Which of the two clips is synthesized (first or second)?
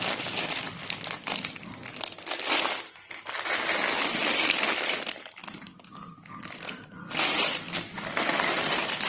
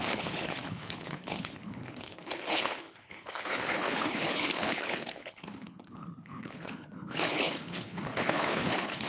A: second